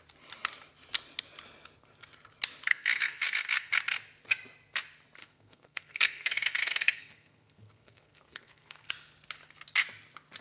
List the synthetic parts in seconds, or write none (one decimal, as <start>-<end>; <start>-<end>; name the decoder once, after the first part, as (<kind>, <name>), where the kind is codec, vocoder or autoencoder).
2.7-3.7 (codec, SNAC); 5.2-8.9